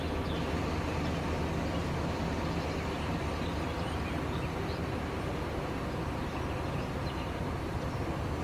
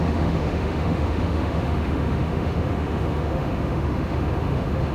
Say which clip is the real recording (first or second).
first